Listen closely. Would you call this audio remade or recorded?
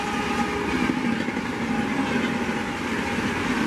recorded